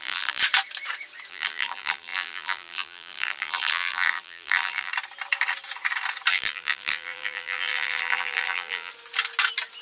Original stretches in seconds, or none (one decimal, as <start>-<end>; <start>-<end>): 0.4-1.3; 4.9-6.3; 8.9-9.8